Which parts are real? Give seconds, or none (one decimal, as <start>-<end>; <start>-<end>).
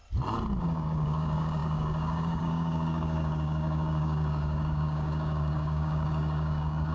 0.0-0.6